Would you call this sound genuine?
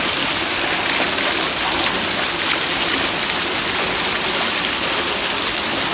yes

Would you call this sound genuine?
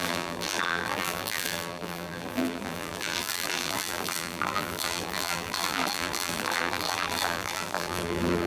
no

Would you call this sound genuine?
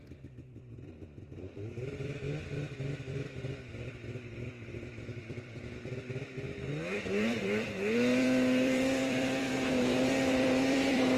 no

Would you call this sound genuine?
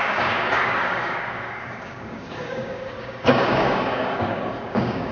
no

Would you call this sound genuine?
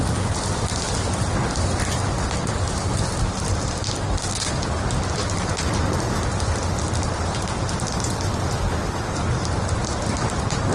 yes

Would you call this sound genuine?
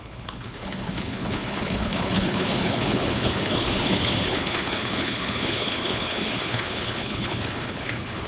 no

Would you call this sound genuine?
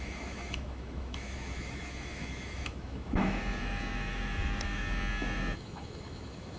no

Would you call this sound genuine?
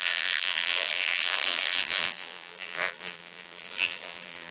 no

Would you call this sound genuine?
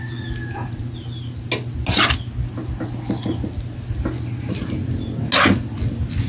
yes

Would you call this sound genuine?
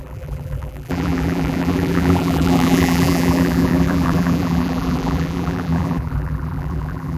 no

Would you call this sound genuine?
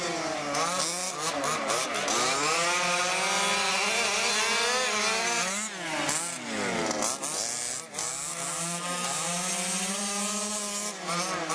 yes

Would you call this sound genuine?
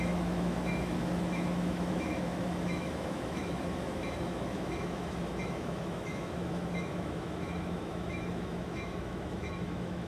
no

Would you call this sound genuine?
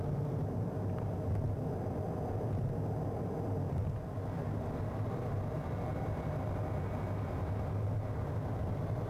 yes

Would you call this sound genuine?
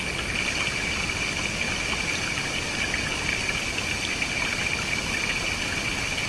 yes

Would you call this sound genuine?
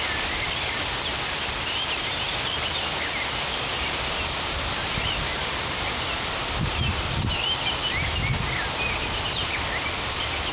yes